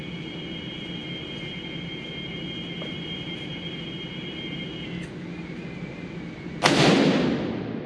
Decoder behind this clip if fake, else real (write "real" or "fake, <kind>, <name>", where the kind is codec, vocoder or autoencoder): real